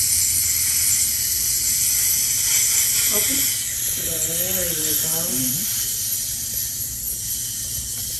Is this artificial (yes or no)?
no